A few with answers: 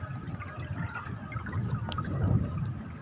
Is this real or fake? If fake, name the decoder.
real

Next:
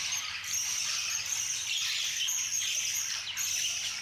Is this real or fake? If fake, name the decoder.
real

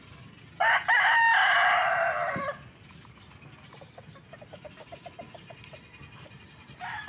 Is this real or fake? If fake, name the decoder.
real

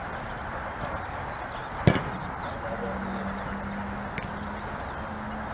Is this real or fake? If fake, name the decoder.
real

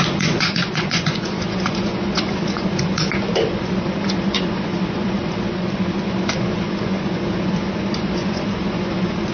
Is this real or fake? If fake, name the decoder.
fake, vocoder, Vocos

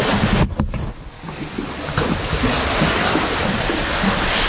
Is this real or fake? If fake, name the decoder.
fake, vocoder, BigVGAN v2